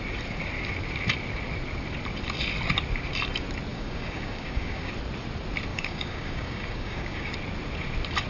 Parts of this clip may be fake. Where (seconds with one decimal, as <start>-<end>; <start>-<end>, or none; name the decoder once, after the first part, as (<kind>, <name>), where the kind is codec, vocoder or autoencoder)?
3.7-4.9 (codec, DAC); 5.7-7.3